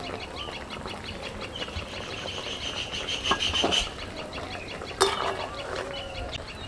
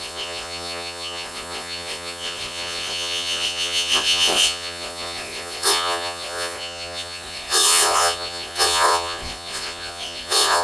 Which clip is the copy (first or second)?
second